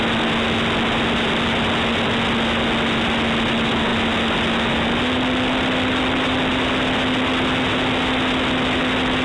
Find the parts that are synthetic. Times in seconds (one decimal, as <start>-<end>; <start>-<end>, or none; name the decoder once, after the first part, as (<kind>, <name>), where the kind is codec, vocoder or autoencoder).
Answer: none